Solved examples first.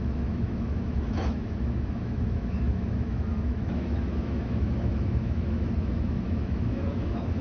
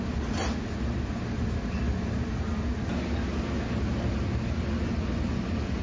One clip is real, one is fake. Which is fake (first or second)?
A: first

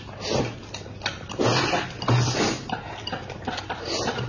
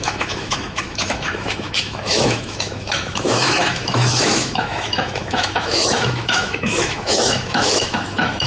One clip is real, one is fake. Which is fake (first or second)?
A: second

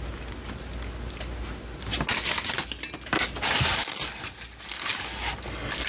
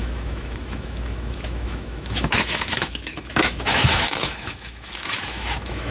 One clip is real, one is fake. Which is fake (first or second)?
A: second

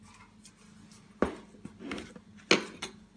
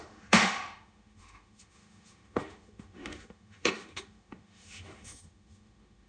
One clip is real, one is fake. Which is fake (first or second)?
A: second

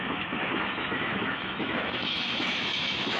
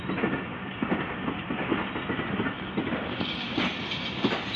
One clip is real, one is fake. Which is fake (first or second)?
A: first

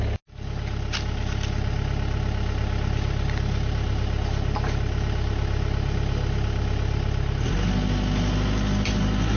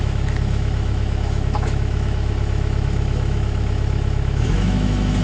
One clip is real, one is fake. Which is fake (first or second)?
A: second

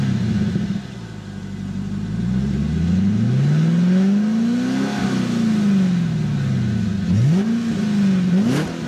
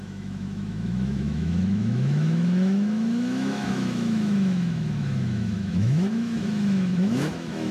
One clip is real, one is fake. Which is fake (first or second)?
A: second